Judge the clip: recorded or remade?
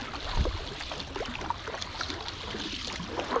recorded